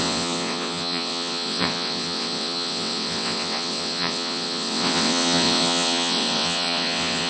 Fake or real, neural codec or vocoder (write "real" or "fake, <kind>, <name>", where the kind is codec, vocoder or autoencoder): fake, vocoder, WaveNeXt